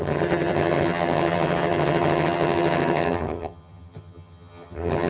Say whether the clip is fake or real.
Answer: fake